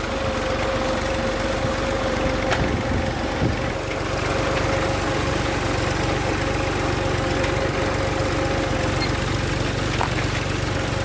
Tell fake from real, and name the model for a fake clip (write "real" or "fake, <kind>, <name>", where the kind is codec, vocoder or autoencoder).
real